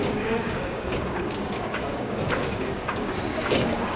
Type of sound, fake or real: fake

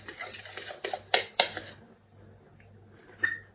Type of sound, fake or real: real